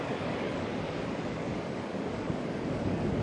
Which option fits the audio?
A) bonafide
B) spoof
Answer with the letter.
B